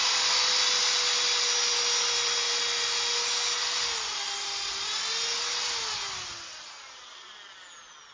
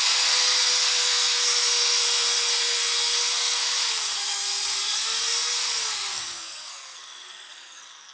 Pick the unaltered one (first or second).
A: first